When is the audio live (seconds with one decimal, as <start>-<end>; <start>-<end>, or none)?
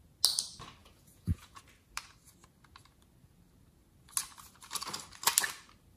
0.0-0.8; 1.6-6.0